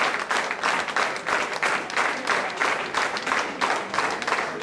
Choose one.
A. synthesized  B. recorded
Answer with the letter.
B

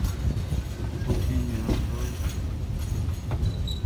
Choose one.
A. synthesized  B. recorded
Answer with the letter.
B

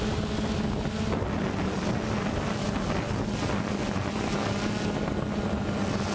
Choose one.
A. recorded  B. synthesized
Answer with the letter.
A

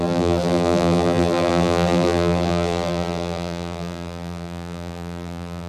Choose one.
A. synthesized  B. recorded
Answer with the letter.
A